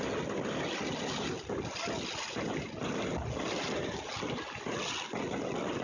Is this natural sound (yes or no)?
yes